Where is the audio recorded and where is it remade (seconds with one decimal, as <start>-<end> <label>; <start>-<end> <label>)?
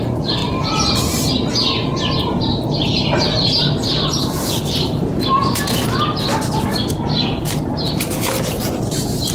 0.0-0.4 recorded; 0.4-4.5 remade; 4.5-9.3 recorded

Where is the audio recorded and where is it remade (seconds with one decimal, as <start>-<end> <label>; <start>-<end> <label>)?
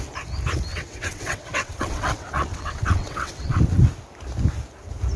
0.0-0.7 recorded; 0.7-3.6 remade; 3.6-5.2 recorded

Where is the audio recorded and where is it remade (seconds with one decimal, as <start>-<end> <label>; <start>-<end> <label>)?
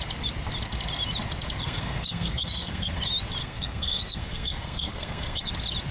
0.0-1.6 recorded; 1.6-3.0 remade; 3.0-3.4 recorded; 3.4-5.5 remade; 5.5-5.9 recorded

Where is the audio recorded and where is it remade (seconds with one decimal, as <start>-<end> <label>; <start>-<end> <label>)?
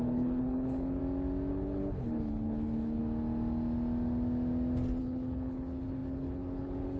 0.0-1.0 remade; 1.0-1.5 recorded; 1.5-3.0 remade; 3.0-5.0 recorded; 5.0-7.0 remade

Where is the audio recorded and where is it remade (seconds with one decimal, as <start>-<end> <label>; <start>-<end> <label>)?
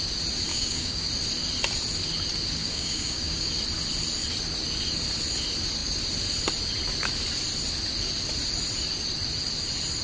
0.0-0.5 recorded; 0.5-1.1 remade; 1.1-2.6 recorded; 2.6-3.5 remade; 3.5-10.0 recorded